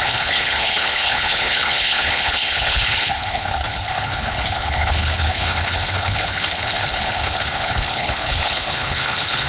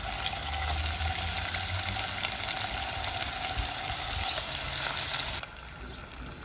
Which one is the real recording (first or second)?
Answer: second